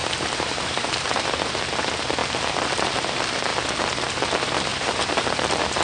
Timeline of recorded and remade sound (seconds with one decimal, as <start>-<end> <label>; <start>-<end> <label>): 0.0-1.5 remade; 1.5-4.7 recorded; 4.7-5.8 remade